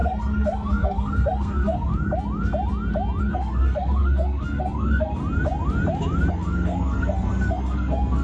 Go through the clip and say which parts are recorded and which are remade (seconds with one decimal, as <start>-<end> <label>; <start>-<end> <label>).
0.0-1.9 remade; 1.9-3.2 recorded; 3.2-5.2 remade; 5.2-6.3 recorded; 6.3-8.2 remade